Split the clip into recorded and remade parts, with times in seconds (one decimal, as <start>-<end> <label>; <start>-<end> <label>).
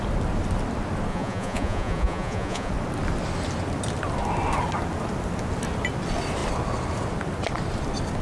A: 0.0-1.1 recorded; 1.1-2.7 remade; 2.7-8.2 recorded